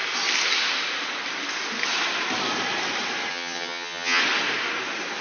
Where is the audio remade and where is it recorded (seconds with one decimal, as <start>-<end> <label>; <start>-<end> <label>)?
0.0-3.3 recorded; 3.3-4.2 remade; 4.2-5.2 recorded